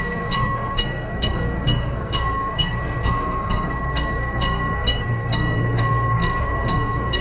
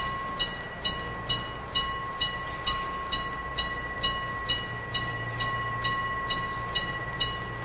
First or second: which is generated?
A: first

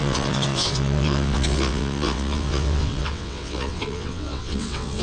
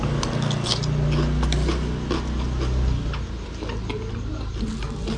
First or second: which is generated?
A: first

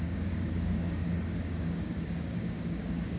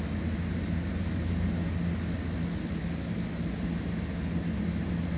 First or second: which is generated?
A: first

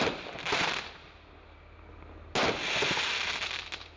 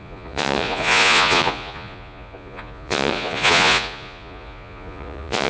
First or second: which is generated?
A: second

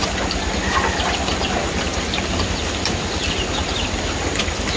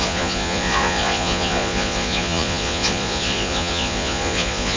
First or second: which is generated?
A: second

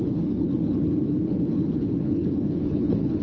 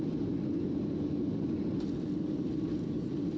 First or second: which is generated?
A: first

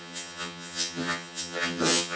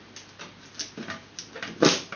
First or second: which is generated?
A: first